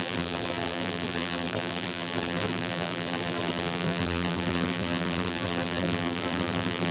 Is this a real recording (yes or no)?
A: no